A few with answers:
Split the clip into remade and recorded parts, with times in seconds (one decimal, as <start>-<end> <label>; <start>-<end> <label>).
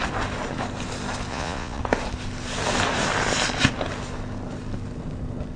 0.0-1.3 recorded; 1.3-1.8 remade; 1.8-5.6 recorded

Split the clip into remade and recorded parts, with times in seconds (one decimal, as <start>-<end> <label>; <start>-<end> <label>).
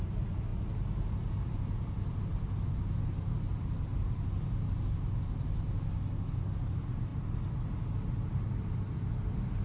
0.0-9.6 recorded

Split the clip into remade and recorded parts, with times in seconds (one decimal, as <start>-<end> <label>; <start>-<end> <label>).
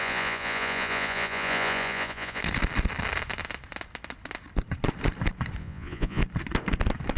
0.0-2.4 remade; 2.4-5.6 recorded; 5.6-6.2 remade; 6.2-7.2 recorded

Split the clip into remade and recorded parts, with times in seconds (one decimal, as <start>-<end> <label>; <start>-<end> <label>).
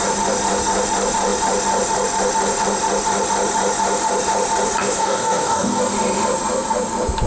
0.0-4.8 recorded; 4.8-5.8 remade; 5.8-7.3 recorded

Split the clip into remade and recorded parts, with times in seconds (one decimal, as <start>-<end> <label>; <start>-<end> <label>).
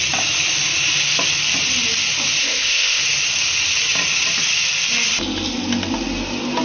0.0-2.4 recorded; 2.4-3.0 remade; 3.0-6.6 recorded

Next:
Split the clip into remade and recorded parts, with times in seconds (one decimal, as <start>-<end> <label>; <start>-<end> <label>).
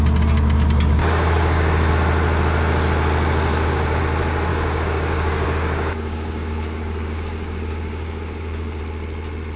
0.0-1.0 recorded; 1.0-1.9 remade; 1.9-3.5 recorded; 3.5-4.0 remade; 4.0-4.5 recorded; 4.5-8.8 remade; 8.8-9.6 recorded